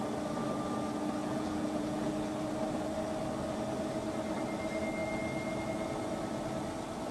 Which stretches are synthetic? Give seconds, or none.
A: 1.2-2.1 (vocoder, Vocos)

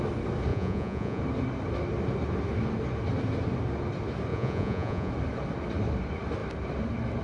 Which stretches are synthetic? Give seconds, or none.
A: 0.5-1.2 (vocoder, Vocos); 4.3-5.1

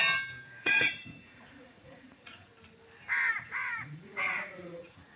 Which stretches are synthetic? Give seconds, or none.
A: 0.6-2.5 (vocoder, Vocos); 3.3-5.2

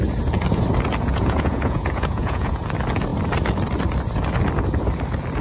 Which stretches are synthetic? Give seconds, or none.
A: 1.1-2.6 (vocoder, Vocos)

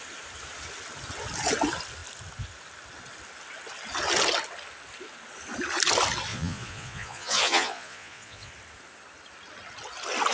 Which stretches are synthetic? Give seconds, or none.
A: 6.3-8.5 (vocoder, Vocos)

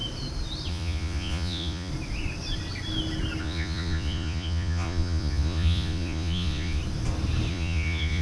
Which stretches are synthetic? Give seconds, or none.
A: 0.7-1.9 (vocoder, Vocos); 3.4-6.8; 7.5-8.2

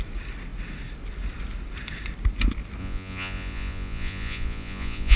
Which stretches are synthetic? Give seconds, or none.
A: 2.8-5.2 (vocoder, Vocos)